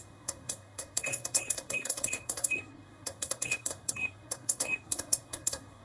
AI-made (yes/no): yes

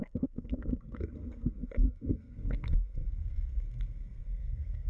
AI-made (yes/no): yes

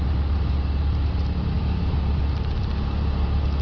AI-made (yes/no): no